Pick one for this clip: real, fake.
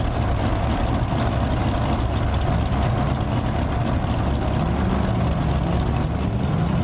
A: real